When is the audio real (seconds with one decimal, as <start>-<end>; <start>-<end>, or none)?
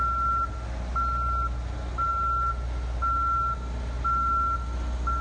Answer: 0.0-5.2